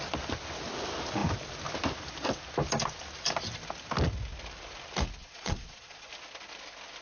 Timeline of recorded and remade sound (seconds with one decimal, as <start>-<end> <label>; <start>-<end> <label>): 0.0-5.2 recorded; 5.2-6.1 remade; 6.1-7.0 recorded